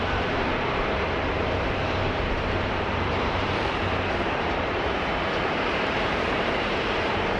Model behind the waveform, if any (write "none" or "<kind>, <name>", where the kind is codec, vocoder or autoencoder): vocoder, BigVGAN v2